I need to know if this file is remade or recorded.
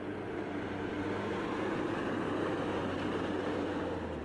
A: recorded